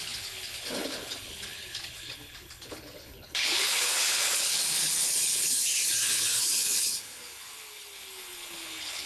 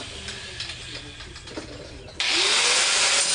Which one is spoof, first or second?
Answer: first